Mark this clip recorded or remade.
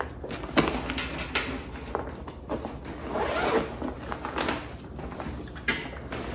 recorded